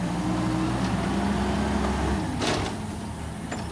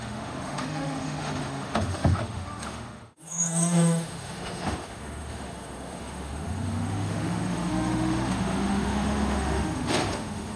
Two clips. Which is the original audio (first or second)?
first